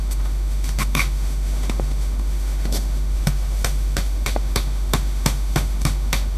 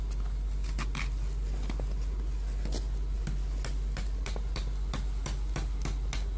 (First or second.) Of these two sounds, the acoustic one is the second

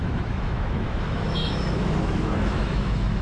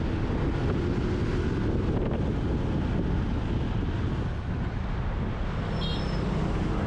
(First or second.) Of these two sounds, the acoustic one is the second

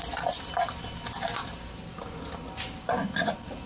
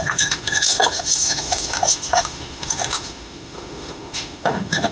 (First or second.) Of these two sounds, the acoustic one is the first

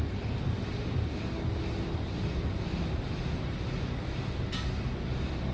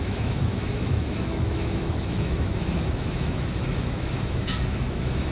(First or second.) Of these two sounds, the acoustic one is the first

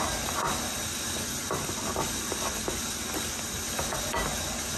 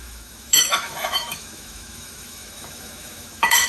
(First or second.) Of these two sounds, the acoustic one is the first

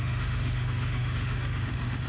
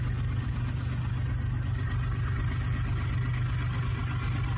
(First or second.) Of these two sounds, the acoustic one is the second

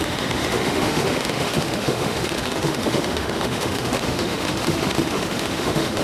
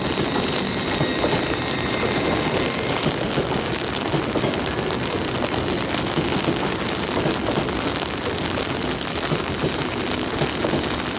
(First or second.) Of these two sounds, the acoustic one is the second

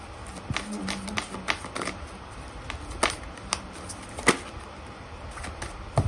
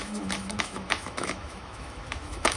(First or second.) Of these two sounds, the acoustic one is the first